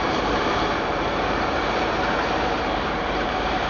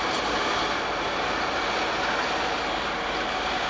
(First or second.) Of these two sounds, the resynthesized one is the first